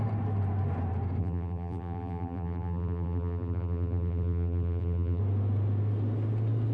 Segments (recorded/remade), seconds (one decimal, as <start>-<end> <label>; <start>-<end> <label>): 0.0-1.2 recorded; 1.2-5.2 remade; 5.2-6.7 recorded